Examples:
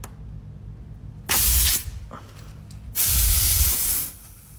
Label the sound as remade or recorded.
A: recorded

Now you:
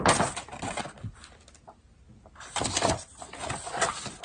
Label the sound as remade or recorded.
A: recorded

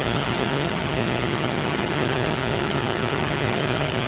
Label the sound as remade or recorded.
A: remade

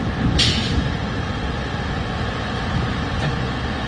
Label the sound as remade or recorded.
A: remade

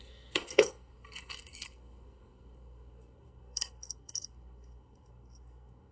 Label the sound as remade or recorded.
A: remade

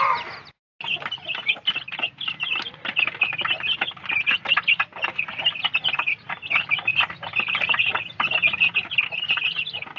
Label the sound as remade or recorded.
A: recorded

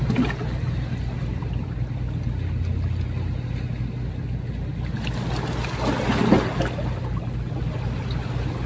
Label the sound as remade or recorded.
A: recorded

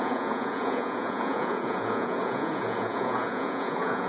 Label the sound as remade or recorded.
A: remade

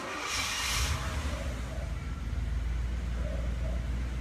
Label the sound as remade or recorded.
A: recorded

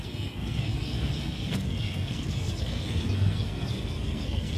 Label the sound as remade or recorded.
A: remade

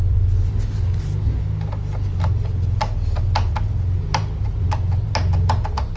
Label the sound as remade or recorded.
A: recorded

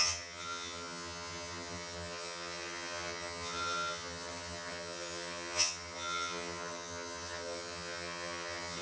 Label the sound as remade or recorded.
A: remade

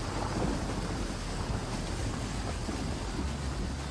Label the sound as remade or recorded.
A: recorded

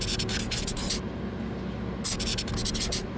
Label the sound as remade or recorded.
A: recorded